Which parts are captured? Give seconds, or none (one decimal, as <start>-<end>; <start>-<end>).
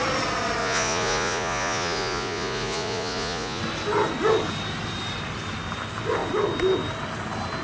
0.0-0.6; 3.6-7.6